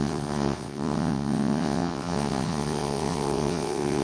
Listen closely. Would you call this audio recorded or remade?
remade